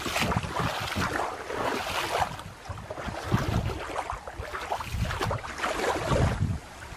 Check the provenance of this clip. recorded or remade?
recorded